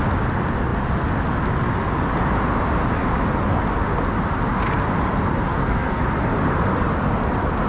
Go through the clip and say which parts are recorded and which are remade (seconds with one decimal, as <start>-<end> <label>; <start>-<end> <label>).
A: 0.0-5.5 recorded; 5.5-6.0 remade; 6.0-7.7 recorded